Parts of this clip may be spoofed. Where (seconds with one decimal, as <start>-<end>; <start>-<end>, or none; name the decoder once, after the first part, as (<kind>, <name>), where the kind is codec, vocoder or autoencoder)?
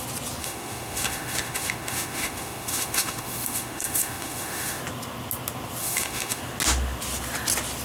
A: 0.4-4.8 (autoencoder, DAC-VAE); 5.8-6.4